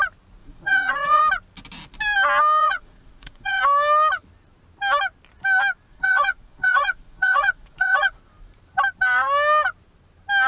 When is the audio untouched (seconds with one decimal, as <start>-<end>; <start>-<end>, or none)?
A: 0.0-0.4; 1.2-2.6; 3.6-5.9; 8.2-10.5